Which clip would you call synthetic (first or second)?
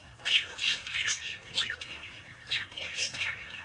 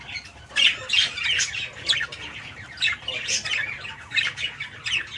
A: first